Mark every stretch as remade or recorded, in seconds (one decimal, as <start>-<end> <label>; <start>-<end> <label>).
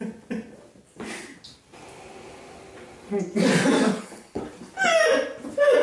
0.0-3.9 recorded; 3.9-4.4 remade; 4.4-5.8 recorded